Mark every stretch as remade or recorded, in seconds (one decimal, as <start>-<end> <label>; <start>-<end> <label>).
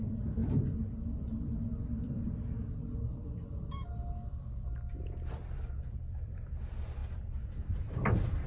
0.0-8.5 remade